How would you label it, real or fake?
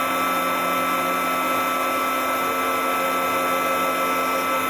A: real